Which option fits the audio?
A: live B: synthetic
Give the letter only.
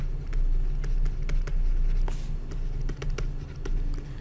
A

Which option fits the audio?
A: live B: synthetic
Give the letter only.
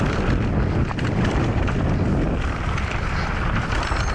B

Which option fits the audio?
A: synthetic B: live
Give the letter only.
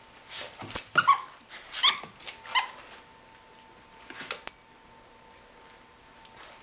B